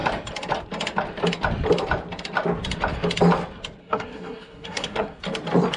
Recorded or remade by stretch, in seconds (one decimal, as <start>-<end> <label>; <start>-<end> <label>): 0.0-3.8 recorded; 3.8-5.2 remade; 5.2-5.8 recorded